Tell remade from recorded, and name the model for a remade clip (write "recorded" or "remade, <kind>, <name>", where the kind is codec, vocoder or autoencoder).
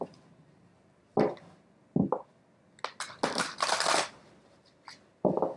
recorded